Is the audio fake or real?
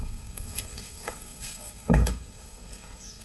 fake